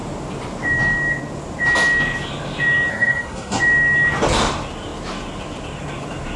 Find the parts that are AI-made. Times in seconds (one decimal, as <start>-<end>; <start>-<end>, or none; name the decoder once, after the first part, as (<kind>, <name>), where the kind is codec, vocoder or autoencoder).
2.9-3.6 (codec, SNAC)